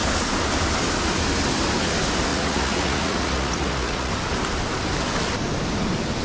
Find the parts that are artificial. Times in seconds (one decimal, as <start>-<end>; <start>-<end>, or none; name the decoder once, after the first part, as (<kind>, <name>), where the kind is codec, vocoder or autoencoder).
2.3-4.1 (vocoder, Vocos)